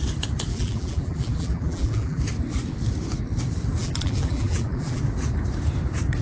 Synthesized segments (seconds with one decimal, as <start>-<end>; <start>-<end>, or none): 0.5-2.2; 3.8-5.0